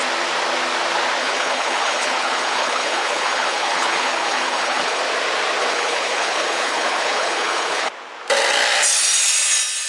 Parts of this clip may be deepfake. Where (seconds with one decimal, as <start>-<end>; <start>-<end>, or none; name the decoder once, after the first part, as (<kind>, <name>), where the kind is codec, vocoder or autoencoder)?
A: 1.2-5.0 (codec, HILCodec); 5.6-7.9